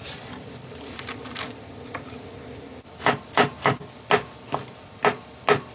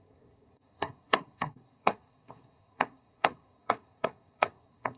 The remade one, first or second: second